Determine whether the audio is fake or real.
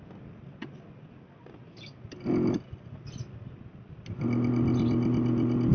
real